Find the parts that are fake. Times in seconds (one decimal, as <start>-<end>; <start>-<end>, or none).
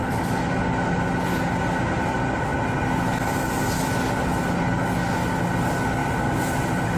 6.0-7.0